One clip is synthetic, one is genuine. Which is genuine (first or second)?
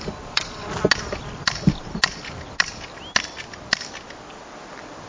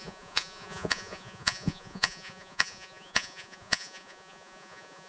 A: first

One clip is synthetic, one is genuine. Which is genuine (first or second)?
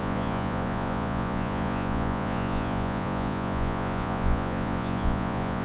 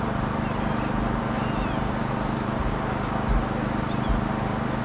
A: second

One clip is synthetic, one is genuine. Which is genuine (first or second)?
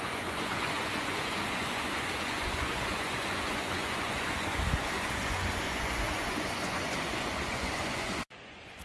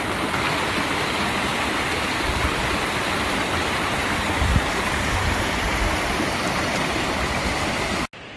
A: second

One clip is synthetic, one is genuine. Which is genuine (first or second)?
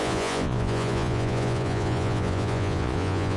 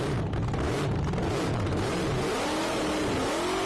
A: second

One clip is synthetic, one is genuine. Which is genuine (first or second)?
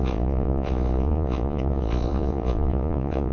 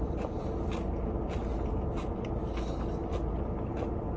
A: second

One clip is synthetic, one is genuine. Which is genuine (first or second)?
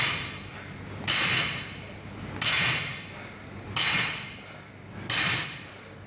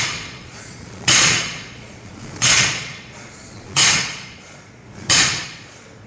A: first